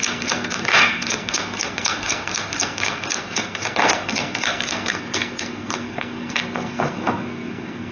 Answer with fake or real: fake